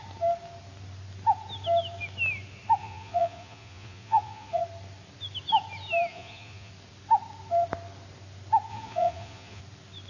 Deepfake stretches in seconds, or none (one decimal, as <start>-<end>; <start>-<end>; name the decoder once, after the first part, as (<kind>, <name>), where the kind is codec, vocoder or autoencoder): 2.8-4.6 (vocoder, Vocos); 6.1-6.7; 8.7-9.6